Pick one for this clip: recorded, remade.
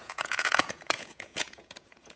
remade